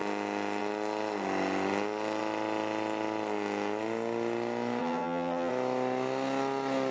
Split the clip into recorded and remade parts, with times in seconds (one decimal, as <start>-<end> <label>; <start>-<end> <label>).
0.0-4.8 recorded; 4.8-5.5 remade; 5.5-6.9 recorded